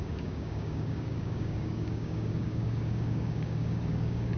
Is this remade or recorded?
remade